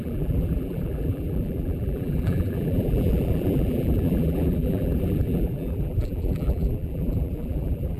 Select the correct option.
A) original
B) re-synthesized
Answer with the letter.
B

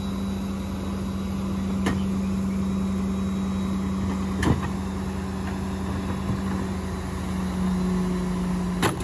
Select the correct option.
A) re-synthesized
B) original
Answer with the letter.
B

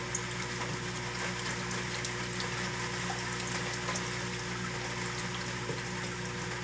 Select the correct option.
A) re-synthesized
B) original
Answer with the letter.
B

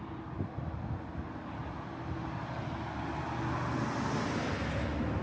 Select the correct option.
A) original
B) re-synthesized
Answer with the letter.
A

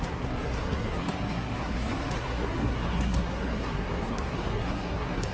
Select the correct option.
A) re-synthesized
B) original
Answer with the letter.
A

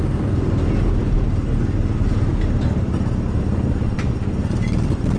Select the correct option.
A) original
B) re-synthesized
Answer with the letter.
A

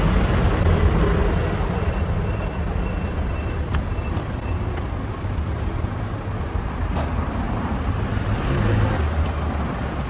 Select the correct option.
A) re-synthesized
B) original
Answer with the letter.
B